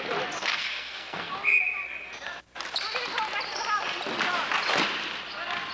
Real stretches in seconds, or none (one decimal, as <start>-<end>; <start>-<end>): 0.0-0.4; 1.3-5.7